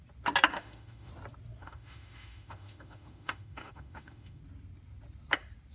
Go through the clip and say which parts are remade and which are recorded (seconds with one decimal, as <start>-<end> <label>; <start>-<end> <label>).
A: 0.0-0.5 recorded; 0.5-1.1 remade; 1.1-1.6 recorded; 1.6-4.4 remade; 4.4-5.7 recorded